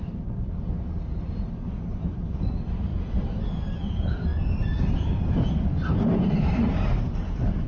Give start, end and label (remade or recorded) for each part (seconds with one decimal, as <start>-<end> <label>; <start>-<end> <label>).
0.0-4.3 remade; 4.3-5.9 recorded; 5.9-7.7 remade